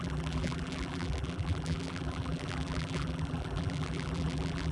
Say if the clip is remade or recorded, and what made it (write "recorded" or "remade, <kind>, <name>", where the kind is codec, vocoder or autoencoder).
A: remade, vocoder, BigVGAN v2